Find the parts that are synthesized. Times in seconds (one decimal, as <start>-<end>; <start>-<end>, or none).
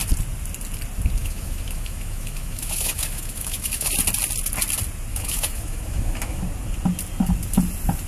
1.2-3.9; 5.1-6.4